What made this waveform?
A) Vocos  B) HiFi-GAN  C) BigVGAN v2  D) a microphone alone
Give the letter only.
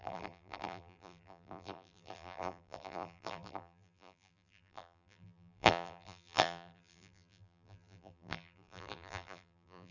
C